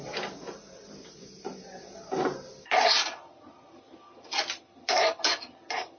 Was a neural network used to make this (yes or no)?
yes